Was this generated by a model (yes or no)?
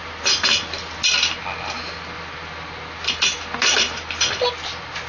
no